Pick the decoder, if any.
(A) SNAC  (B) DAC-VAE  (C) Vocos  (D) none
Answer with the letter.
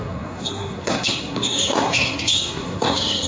A